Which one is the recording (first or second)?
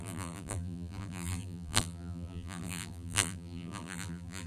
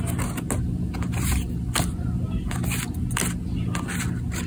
second